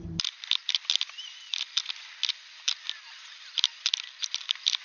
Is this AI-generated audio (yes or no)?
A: no